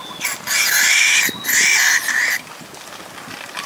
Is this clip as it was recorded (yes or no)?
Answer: yes